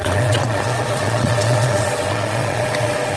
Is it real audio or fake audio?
fake